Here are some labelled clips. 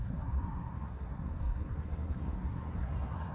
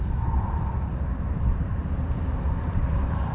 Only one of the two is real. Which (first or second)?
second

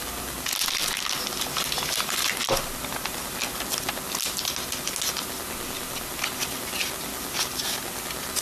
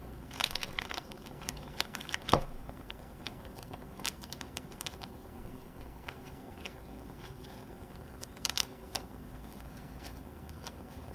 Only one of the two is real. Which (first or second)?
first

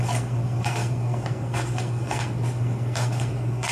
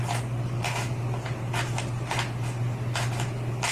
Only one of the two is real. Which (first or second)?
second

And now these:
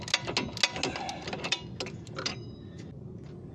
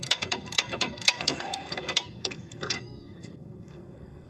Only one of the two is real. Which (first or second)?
first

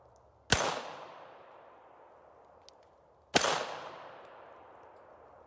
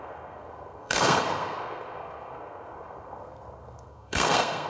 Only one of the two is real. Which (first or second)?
first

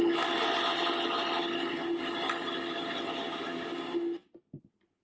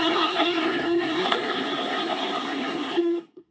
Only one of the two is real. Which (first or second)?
first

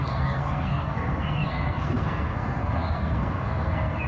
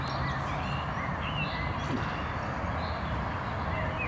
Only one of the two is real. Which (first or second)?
second